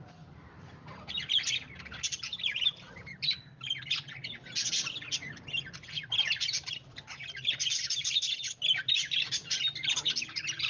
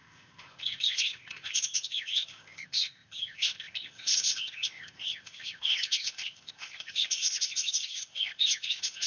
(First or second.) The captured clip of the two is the first